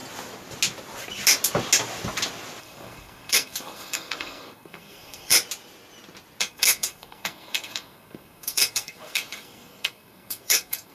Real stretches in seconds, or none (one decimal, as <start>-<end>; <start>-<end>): 0.0-2.6; 5.3-6.4

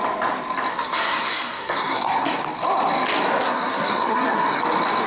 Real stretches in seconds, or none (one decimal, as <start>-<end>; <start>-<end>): 0.0-0.7; 2.4-3.4; 4.6-5.1